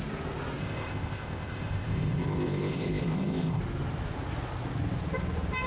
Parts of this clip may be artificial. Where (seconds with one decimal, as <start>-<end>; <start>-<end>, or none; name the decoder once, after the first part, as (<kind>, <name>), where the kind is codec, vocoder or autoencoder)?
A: 0.6-3.6 (codec, ZipCodec)